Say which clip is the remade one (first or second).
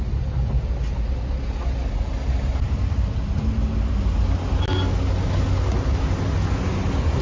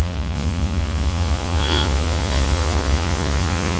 second